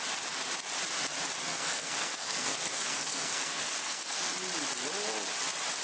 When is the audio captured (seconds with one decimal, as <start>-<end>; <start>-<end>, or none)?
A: 0.0-1.4; 4.3-5.8

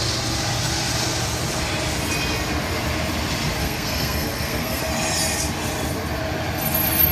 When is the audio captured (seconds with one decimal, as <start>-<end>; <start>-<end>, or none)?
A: 0.0-3.6; 4.8-7.1

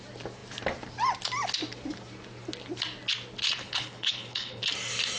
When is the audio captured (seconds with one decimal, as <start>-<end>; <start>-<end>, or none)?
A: 0.0-3.6; 4.6-5.2

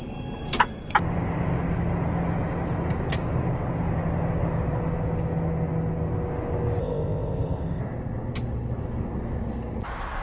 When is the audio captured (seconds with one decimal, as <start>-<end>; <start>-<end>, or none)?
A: 0.0-6.8; 7.8-10.2

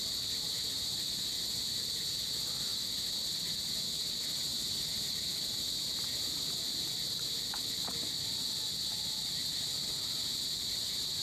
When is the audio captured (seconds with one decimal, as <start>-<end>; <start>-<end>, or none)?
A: 0.0-11.2

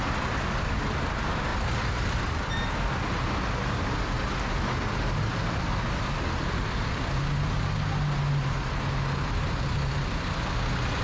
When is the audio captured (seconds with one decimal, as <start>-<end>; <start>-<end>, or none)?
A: 0.0-11.0

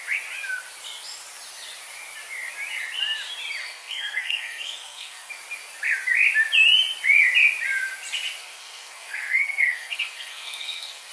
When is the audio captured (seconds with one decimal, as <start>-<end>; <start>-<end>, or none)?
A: 0.0-3.6; 5.3-8.4